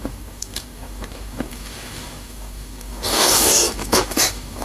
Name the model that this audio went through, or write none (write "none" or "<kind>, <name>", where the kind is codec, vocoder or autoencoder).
codec, DAC